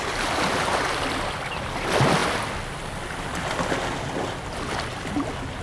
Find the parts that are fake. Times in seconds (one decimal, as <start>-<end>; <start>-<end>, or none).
none